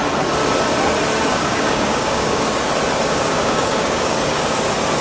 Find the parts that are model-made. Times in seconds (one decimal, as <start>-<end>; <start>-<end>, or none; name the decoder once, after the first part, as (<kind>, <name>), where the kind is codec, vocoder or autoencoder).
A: 1.3-2.5 (codec, DAC); 3.1-4.6